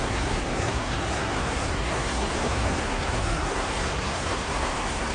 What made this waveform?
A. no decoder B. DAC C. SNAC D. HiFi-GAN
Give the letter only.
C